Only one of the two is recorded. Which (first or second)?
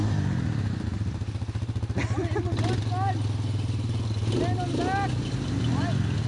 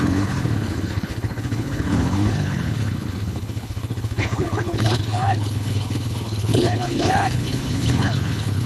first